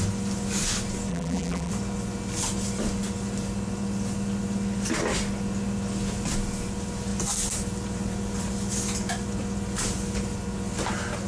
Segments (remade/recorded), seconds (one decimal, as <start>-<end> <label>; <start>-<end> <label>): 0.0-1.1 recorded; 1.1-1.7 remade; 1.7-11.3 recorded